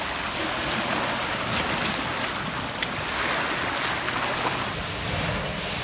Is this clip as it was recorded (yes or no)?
yes